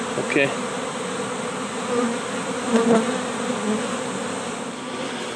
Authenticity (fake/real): fake